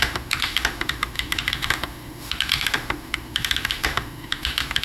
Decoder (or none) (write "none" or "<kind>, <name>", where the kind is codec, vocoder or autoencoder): autoencoder, DAC-VAE